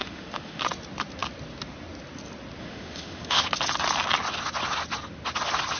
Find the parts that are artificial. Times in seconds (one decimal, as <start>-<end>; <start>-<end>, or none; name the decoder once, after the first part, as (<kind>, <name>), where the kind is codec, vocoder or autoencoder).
0.0-0.6 (autoencoder, DAC-VAE); 2.6-3.5